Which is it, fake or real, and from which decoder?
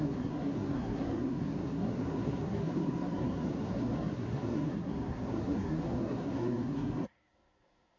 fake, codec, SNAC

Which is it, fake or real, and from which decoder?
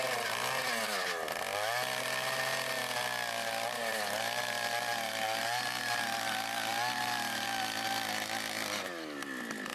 real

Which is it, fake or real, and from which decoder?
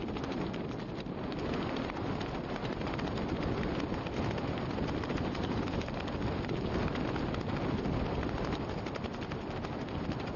real